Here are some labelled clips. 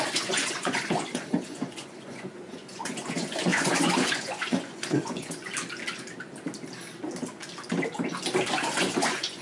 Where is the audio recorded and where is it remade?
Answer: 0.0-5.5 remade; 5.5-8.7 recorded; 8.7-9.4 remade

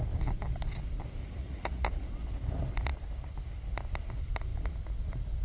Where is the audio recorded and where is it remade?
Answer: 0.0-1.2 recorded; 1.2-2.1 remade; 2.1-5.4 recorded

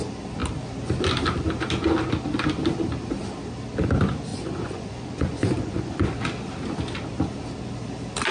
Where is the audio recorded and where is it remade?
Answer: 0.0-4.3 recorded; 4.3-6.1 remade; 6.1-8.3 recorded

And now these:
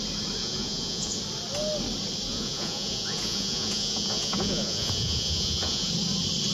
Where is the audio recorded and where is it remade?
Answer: 0.0-0.4 recorded; 0.4-1.2 remade; 1.2-2.3 recorded; 2.3-5.9 remade; 5.9-6.5 recorded

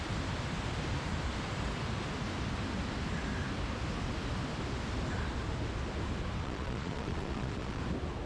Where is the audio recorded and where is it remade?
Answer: 0.0-6.4 recorded; 6.4-7.8 remade; 7.8-8.3 recorded